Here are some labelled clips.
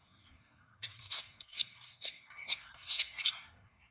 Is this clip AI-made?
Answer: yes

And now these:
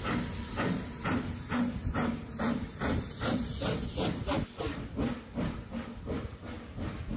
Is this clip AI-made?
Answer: no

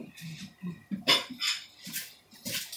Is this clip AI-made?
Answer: yes